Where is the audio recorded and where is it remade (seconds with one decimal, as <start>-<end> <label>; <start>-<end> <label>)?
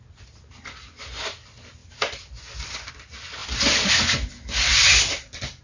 0.0-1.8 recorded; 1.8-2.9 remade; 2.9-3.4 recorded; 3.4-3.9 remade; 3.9-4.7 recorded; 4.7-5.6 remade